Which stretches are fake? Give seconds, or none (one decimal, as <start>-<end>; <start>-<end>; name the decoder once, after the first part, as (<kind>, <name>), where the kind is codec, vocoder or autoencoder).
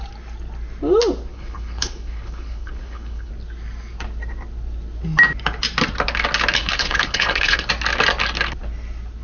1.3-3.3 (codec, HILCodec); 6.6-7.7